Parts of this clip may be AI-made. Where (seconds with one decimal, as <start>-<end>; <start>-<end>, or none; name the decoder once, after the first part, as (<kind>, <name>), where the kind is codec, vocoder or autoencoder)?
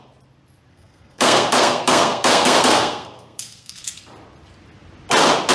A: 0.7-4.0 (codec, SNAC)